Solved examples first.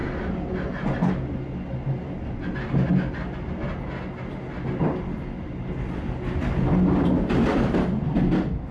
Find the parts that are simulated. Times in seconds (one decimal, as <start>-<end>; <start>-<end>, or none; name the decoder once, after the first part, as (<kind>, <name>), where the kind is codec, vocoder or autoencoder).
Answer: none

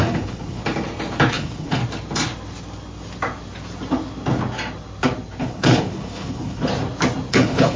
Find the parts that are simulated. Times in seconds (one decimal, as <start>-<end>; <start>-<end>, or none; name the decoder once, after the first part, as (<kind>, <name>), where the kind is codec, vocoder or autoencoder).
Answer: 0.0-0.6 (codec, HILCodec); 1.3-1.8; 5.4-6.7; 7.3-7.8

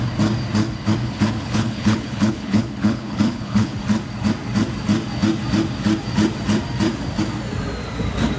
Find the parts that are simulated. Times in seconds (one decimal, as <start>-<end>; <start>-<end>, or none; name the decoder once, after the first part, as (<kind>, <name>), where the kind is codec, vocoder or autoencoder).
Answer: 1.0-3.8 (codec, HILCodec)

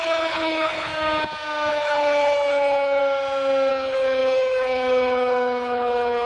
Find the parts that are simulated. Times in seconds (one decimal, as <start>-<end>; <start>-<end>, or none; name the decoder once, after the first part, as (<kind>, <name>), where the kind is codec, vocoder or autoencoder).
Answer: 0.0-0.9 (codec, HILCodec); 1.7-3.0; 3.7-6.3

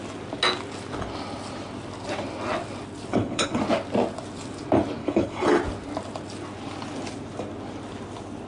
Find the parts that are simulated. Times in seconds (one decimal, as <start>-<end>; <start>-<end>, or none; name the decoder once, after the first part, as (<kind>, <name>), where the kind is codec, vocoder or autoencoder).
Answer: 3.1-3.6 (codec, HILCodec); 5.0-5.6